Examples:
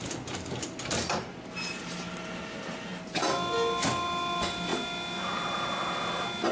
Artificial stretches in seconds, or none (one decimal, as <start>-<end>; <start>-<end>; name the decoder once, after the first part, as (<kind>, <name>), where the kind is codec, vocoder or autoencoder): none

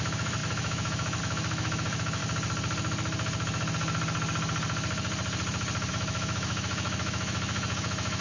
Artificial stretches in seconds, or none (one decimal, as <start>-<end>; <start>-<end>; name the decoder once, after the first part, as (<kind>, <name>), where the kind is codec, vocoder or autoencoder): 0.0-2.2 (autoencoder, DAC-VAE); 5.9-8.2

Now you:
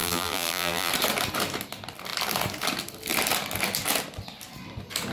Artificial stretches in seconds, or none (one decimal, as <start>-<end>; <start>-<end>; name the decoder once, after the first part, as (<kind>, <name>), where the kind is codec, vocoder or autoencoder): 0.0-0.9 (vocoder, BigVGAN v2)